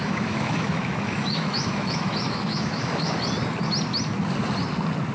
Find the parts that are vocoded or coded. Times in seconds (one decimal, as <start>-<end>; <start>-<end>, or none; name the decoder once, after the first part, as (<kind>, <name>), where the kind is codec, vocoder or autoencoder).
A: 0.0-3.1 (autoencoder, DAC-VAE)

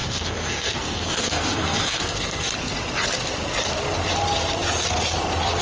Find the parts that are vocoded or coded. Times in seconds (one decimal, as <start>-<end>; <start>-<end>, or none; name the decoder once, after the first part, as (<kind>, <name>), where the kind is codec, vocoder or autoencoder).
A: 0.0-2.5 (codec, SNAC)

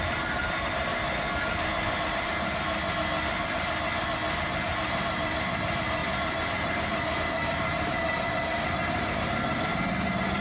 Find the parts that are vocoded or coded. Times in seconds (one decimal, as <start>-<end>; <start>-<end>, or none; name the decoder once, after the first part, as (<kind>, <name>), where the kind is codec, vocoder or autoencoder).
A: 0.0-0.9 (vocoder, BigVGAN v2); 2.1-2.8; 4.4-10.4